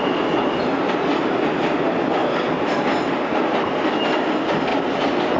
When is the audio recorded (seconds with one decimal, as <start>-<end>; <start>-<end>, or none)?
0.0-5.4